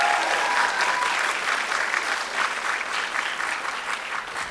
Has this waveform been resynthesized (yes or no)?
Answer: no